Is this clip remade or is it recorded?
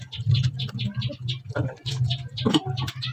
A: recorded